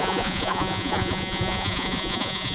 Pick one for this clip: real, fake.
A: fake